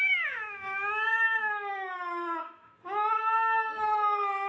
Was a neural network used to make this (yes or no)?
yes